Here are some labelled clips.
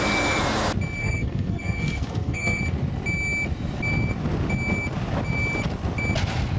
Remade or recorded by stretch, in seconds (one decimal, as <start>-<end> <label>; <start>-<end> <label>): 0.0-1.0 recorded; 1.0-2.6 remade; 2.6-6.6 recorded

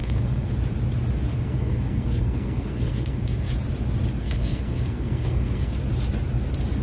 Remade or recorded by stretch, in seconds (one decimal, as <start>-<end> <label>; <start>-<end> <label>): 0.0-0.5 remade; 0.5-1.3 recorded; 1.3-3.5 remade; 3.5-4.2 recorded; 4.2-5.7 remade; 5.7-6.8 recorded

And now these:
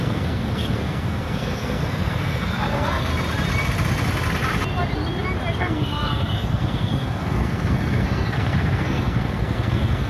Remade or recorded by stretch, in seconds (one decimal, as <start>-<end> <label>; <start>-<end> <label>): 0.0-3.1 remade; 3.1-5.6 recorded; 5.6-10.1 remade

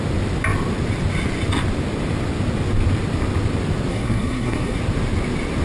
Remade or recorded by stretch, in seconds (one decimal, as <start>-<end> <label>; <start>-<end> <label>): 0.0-3.9 recorded; 3.9-4.8 remade; 4.8-5.6 recorded

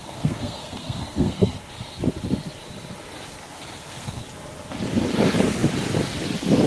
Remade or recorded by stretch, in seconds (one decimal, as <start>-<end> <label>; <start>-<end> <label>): 0.0-1.7 remade; 1.7-3.4 recorded; 3.4-4.2 remade; 4.2-6.7 recorded

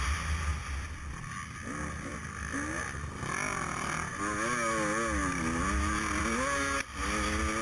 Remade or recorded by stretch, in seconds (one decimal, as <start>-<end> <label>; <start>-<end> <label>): 0.0-7.6 recorded

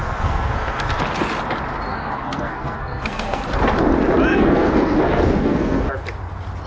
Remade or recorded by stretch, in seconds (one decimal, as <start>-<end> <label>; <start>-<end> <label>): 0.0-1.0 remade; 1.0-1.9 recorded; 1.9-3.4 remade; 3.4-4.3 recorded; 4.3-5.8 remade; 5.8-6.7 recorded

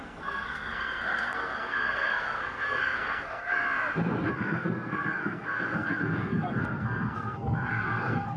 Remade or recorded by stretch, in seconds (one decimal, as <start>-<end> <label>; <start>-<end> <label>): 0.0-3.6 remade; 3.6-4.3 recorded; 4.3-8.4 remade